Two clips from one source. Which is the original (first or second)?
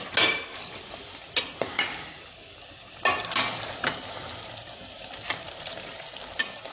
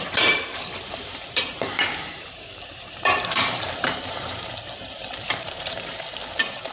first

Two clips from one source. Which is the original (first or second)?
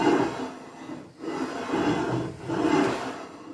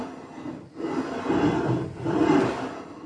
first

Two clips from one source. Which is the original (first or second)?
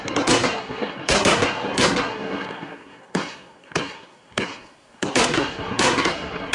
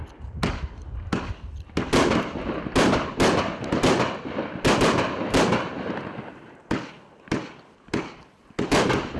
second